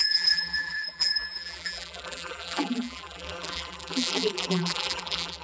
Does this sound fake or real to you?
fake